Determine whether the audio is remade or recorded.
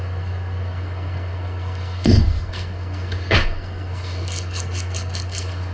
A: remade